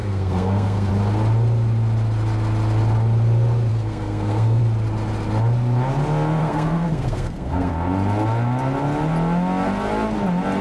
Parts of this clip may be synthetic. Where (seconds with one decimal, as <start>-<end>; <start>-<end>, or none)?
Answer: 0.0-0.9; 3.7-4.6; 6.4-7.7